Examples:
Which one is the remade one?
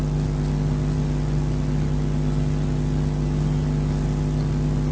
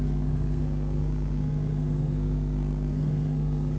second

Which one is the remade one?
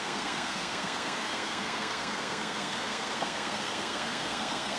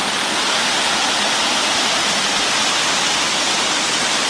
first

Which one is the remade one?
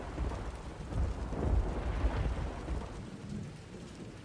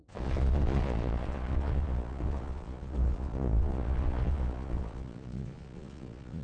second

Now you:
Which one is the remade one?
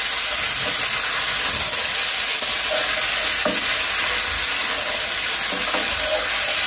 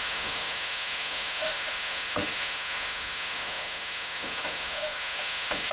second